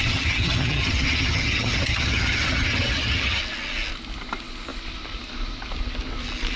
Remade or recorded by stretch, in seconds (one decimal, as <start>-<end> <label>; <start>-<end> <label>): 0.0-3.4 remade; 3.4-6.6 recorded